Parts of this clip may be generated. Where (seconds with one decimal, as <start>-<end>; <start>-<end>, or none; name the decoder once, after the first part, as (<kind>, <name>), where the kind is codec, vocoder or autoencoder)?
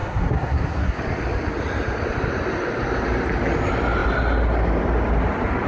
0.0-1.0 (codec, SNAC)